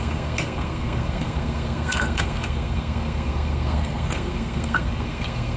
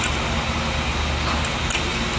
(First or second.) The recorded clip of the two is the second